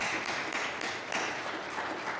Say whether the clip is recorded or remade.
recorded